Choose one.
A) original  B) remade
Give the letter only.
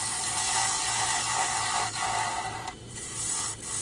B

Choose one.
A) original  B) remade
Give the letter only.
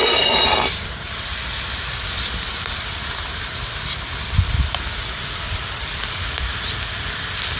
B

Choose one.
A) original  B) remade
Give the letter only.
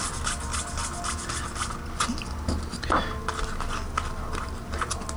A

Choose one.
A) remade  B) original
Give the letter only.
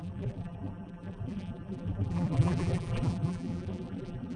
A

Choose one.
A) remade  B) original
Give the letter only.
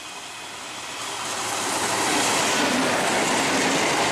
B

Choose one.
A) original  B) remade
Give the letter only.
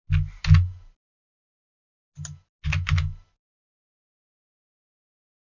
A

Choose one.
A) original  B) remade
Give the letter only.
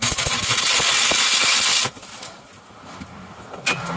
A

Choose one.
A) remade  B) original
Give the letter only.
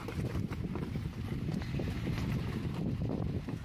A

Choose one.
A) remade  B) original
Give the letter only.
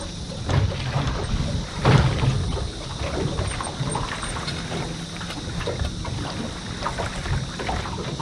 B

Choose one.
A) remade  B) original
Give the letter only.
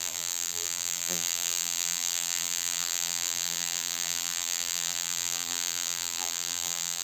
A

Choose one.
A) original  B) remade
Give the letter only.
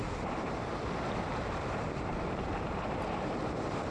B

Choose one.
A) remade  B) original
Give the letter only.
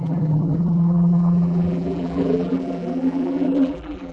A